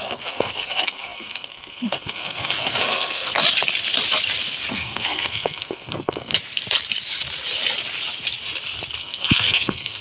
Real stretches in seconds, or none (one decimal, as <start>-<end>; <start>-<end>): 3.4-4.7; 6.3-9.0